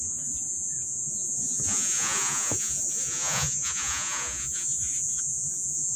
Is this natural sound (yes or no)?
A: no